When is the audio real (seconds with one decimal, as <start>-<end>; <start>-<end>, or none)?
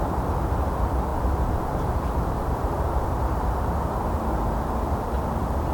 0.0-1.1; 3.7-5.7